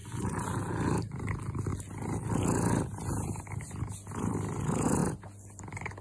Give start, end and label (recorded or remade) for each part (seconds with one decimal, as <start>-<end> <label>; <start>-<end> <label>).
0.0-6.0 recorded